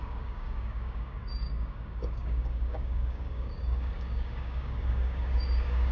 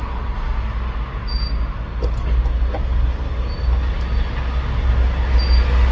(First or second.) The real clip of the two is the second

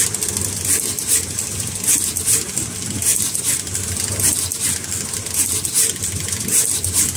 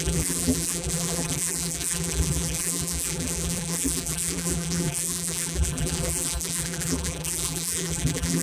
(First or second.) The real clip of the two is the first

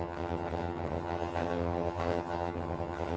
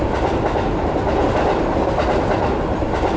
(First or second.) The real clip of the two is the second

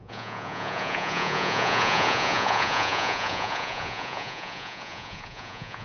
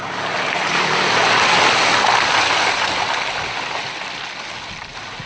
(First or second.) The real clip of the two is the second